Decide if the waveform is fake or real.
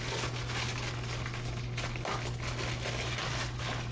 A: real